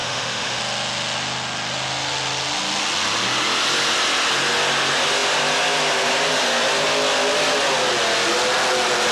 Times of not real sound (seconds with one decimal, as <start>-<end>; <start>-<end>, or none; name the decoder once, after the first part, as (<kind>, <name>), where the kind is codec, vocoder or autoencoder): 0.0-0.6 (autoencoder, DAC-VAE)